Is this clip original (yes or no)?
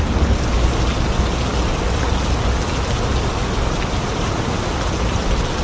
yes